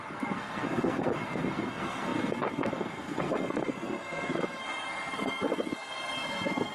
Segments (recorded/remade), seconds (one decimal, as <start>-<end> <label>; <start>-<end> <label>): 0.0-6.7 remade